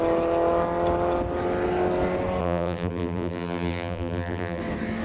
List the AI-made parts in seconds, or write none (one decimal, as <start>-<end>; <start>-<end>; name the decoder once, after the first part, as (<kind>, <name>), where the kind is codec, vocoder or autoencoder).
2.4-4.6 (vocoder, BigVGAN v2)